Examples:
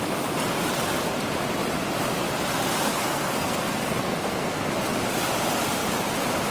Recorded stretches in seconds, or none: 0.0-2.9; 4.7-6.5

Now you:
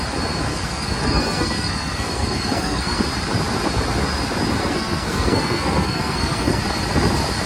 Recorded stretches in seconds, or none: 0.0-0.5; 3.0-4.6; 6.6-7.5

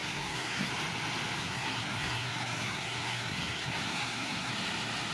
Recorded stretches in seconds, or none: 0.7-1.4; 4.5-5.1